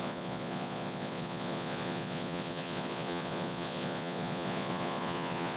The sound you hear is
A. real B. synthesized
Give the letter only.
B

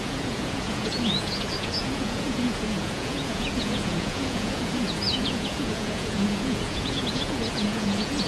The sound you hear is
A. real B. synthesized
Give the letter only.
B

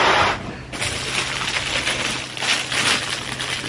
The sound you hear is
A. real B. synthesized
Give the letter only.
A